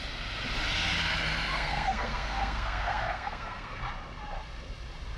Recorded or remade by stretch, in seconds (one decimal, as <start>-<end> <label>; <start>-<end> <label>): 0.0-1.5 recorded; 1.5-3.8 remade; 3.8-5.2 recorded